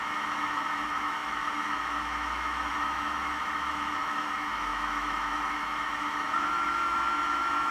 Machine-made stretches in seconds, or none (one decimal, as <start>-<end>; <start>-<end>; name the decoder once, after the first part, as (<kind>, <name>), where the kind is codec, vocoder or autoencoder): 0.0-7.7 (autoencoder, DAC-VAE)